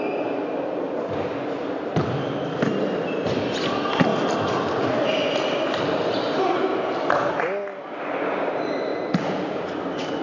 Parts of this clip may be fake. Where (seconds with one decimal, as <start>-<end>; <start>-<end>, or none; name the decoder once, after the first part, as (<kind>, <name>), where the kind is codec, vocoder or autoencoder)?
8.9-9.6 (vocoder, Vocos)